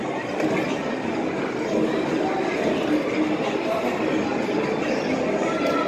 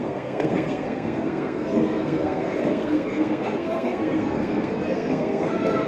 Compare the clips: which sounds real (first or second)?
first